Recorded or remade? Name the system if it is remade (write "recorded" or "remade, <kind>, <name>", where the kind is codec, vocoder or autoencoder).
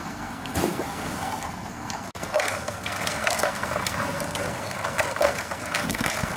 remade, codec, SNAC